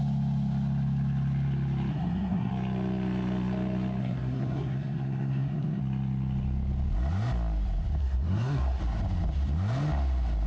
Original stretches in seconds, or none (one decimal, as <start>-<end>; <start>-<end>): 0.0-1.9; 2.5-4.0; 5.8-8.0; 8.8-10.5